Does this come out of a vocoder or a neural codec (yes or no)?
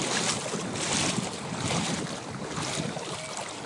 no